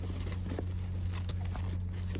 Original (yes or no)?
yes